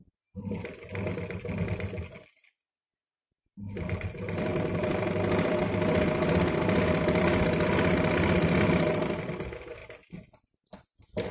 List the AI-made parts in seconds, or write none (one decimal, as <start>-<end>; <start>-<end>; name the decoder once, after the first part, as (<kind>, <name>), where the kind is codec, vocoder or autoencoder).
4.5-9.1 (vocoder, BigVGAN v2)